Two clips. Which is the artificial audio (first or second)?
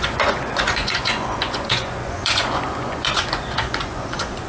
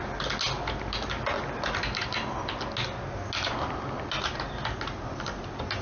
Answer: first